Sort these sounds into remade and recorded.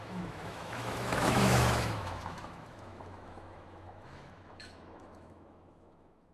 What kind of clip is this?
remade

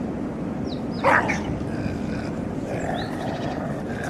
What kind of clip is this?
recorded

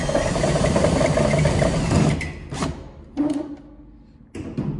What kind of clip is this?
recorded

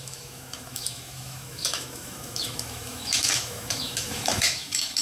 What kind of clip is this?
remade